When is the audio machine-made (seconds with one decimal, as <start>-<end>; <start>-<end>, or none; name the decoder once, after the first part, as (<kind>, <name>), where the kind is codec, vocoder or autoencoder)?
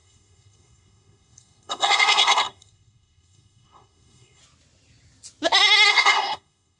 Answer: 0.0-4.4 (codec, SNAC); 5.9-6.8